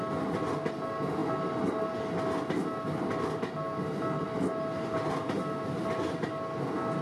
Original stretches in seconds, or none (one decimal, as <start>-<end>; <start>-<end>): 0.0-7.0